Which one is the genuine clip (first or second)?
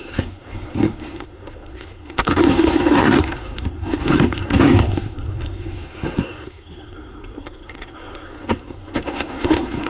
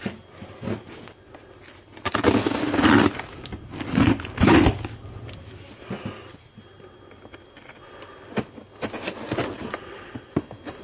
second